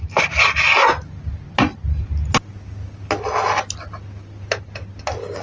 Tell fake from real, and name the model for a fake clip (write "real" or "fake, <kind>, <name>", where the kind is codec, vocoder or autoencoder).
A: real